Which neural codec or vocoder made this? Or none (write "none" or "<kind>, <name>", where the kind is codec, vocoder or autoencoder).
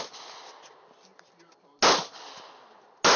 none